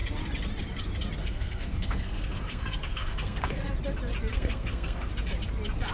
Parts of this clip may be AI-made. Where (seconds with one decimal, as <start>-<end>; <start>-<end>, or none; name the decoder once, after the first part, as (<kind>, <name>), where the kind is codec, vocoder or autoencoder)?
1.2-3.7 (codec, SNAC); 4.3-5.1